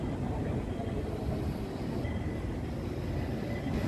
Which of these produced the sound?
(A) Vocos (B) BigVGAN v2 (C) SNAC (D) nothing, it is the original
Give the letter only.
D